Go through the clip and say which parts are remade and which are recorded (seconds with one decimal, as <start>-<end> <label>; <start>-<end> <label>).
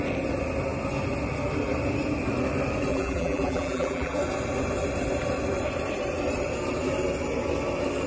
0.0-2.9 recorded; 2.9-4.2 remade; 4.2-8.1 recorded